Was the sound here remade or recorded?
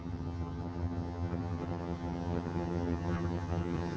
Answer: remade